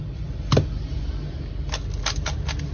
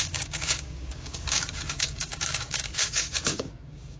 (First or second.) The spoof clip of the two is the second